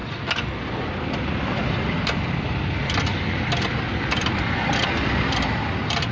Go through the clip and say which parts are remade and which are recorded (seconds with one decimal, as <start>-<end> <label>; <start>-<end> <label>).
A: 0.0-6.1 recorded